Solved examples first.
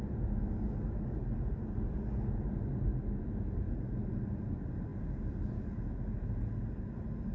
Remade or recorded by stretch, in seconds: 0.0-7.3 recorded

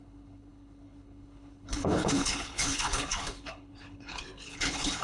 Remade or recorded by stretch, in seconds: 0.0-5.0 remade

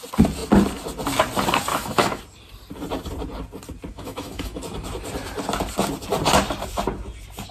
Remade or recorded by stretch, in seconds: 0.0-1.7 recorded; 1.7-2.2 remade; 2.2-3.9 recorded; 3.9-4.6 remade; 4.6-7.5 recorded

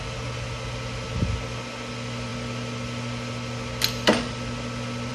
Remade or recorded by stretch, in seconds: 0.0-5.1 recorded

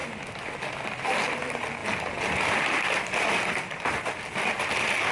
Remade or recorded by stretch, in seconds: 0.0-5.1 recorded

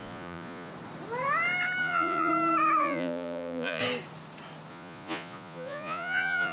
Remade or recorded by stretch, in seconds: 0.0-0.7 remade; 0.7-1.8 recorded; 1.8-2.3 remade; 2.3-2.8 recorded; 2.8-3.8 remade; 3.8-4.7 recorded; 4.7-6.5 remade